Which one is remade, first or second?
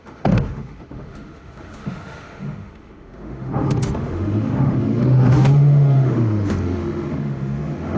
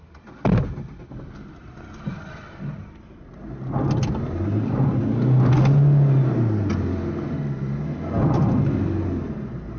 first